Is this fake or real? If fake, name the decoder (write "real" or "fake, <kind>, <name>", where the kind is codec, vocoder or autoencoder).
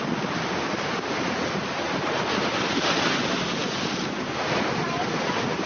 real